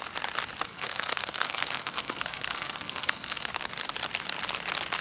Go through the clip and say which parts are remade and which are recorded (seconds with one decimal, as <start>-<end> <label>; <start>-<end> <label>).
0.0-0.7 recorded; 0.7-3.7 remade; 3.7-5.0 recorded